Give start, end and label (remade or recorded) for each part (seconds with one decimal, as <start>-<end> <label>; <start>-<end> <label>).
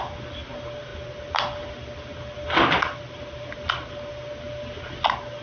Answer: 0.0-5.4 recorded